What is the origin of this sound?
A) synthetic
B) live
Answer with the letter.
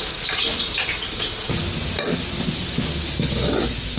B